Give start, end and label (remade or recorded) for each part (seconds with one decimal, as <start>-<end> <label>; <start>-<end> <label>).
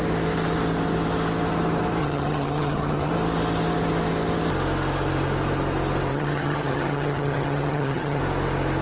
0.0-2.0 recorded; 2.0-3.1 remade; 3.1-6.1 recorded; 6.1-8.2 remade; 8.2-8.8 recorded